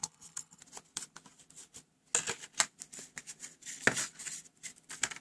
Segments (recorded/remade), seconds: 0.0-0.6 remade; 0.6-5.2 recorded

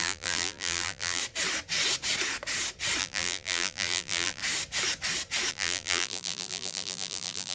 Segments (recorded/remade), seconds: 0.0-1.2 remade; 1.2-3.0 recorded; 3.0-4.4 remade; 4.4-5.5 recorded; 5.5-7.5 remade

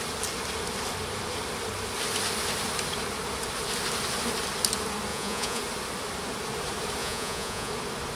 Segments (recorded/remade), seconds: 0.0-5.1 recorded; 5.1-5.6 remade; 5.6-7.0 recorded; 7.0-7.7 remade; 7.7-8.2 recorded

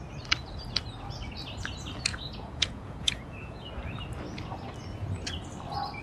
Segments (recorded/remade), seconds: 0.0-2.1 recorded; 2.1-3.7 remade; 3.7-6.0 recorded

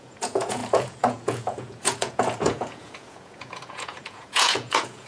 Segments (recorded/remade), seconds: 0.0-5.1 remade